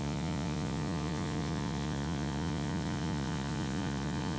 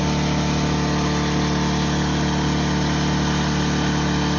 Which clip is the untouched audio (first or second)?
second